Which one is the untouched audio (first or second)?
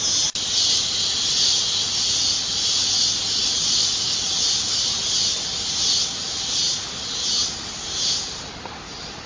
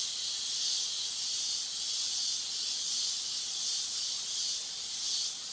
first